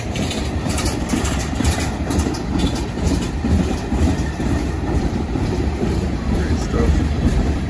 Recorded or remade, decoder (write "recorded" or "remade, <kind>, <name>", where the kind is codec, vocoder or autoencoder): remade, vocoder, BigVGAN v2